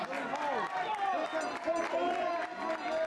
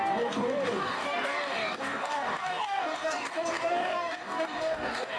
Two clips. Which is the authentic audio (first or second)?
first